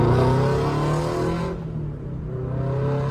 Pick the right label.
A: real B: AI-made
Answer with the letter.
A